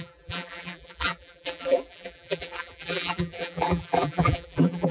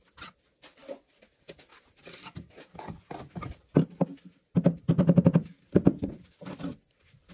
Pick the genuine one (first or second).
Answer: second